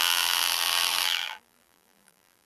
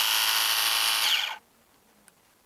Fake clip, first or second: first